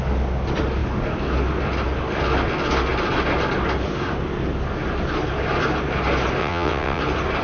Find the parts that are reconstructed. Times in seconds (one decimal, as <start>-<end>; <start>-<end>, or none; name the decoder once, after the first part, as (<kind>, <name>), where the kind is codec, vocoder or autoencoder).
6.4-7.0 (vocoder, WaveNeXt)

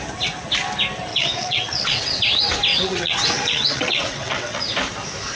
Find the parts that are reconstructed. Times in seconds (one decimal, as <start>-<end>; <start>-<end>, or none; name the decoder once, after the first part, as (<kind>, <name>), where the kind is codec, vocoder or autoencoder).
1.1-2.2 (vocoder, WaveNeXt); 2.7-4.6